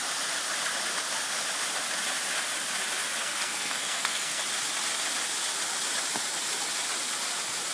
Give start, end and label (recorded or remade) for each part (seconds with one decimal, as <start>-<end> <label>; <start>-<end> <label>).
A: 0.0-3.2 recorded; 3.2-4.4 remade; 4.4-7.7 recorded